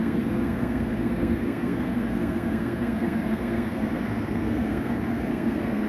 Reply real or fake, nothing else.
fake